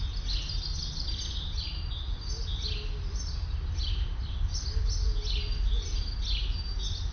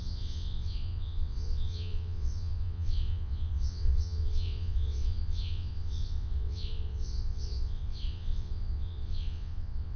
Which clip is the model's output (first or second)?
second